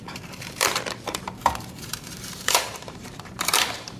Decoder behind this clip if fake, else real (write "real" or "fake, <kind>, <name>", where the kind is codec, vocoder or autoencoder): fake, vocoder, BigVGAN v2